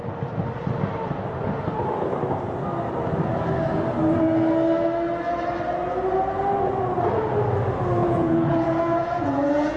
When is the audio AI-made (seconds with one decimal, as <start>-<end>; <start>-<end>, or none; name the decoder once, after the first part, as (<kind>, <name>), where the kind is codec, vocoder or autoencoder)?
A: 8.0-9.8 (vocoder, Vocos)